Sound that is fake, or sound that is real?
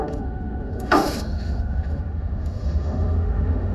fake